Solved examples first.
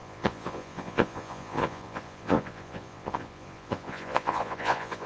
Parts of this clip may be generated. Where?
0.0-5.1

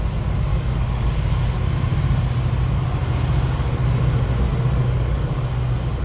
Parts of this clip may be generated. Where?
0.5-1.1; 4.8-5.4

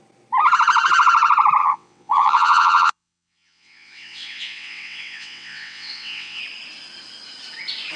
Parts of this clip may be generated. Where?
1.6-6.4

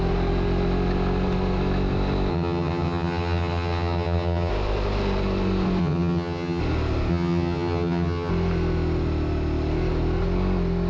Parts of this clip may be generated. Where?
2.3-4.5; 5.8-6.6; 7.1-8.3

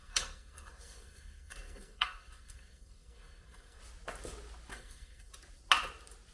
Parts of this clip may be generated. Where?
0.0-3.8; 4.7-5.3

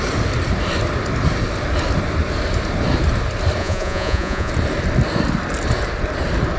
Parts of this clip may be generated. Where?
3.6-4.5

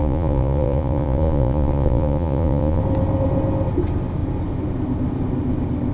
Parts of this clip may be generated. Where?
0.0-2.8